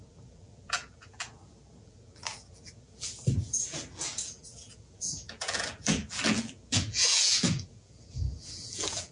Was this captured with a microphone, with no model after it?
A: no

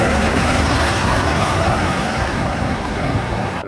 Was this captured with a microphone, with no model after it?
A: no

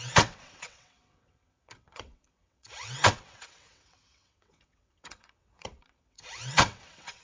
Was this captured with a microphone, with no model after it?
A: no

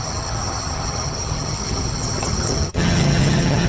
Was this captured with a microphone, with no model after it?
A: no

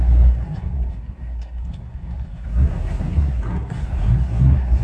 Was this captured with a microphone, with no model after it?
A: no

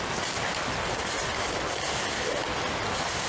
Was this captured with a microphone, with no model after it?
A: yes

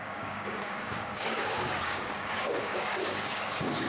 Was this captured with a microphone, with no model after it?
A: no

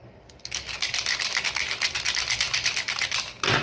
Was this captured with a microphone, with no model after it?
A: yes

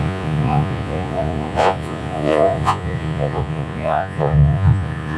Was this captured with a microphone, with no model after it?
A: no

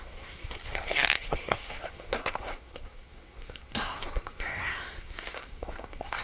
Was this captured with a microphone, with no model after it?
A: no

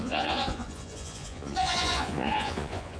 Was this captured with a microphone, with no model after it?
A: no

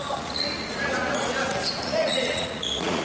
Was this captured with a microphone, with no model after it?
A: no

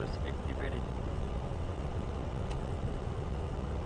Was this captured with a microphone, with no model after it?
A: no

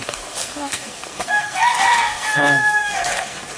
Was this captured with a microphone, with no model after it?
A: no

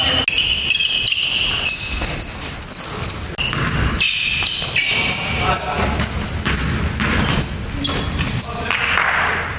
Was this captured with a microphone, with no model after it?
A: yes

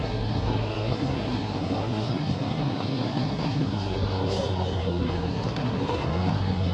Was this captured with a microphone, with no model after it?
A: no